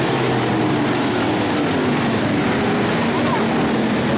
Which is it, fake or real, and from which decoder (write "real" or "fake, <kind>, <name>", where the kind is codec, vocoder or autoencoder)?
real